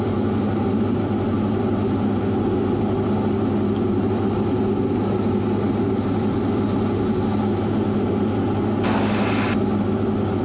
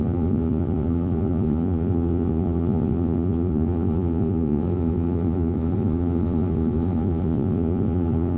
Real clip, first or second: first